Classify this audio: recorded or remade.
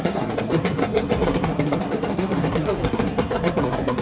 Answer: remade